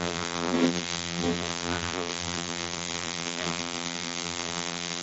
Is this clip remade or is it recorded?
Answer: remade